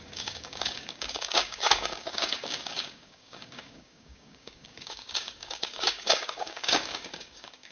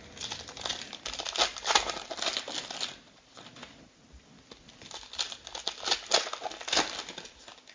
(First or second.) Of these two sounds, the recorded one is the second